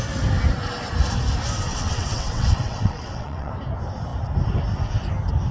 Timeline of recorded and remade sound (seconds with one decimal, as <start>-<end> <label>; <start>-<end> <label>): 0.0-1.7 recorded; 1.7-3.5 remade; 3.5-5.5 recorded